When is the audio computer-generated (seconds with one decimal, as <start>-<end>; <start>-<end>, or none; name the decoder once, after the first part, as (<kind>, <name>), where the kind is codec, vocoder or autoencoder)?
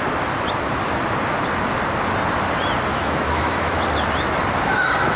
2.9-3.8 (autoencoder, DAC-VAE)